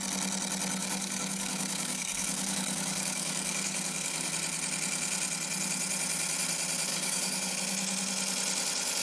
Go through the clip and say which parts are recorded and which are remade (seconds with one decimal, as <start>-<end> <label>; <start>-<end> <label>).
0.0-0.8 recorded; 0.8-4.3 remade; 4.3-6.9 recorded; 6.9-7.5 remade; 7.5-9.0 recorded

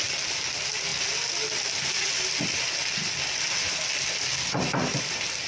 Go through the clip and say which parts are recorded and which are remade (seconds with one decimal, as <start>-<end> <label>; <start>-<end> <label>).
0.0-0.9 remade; 0.9-1.9 recorded; 1.9-5.5 remade

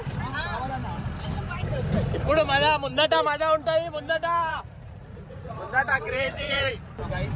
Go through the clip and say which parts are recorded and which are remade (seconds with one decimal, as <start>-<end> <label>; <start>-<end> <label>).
0.0-4.5 recorded; 4.5-6.7 remade; 6.7-7.4 recorded

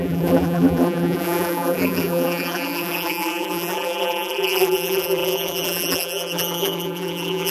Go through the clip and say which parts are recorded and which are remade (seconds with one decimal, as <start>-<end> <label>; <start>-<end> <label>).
0.0-7.5 remade

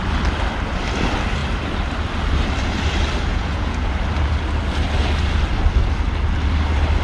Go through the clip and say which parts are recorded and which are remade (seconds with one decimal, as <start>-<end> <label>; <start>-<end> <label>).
0.0-3.3 recorded; 3.3-3.9 remade; 3.9-7.0 recorded

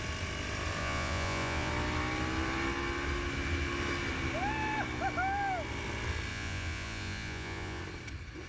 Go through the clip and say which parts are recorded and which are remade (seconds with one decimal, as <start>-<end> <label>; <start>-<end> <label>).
0.0-0.8 recorded; 0.8-1.7 remade; 1.7-6.3 recorded; 6.3-7.8 remade; 7.8-8.5 recorded